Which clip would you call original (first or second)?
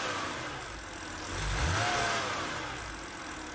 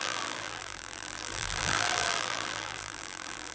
first